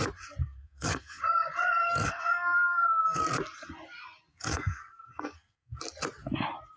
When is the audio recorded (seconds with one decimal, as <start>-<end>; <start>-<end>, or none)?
0.0-0.4; 1.2-1.8; 3.2-4.3; 5.8-6.8